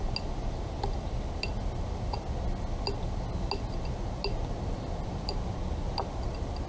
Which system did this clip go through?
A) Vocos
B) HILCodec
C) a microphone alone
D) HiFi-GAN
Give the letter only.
C